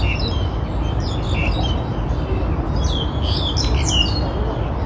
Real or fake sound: real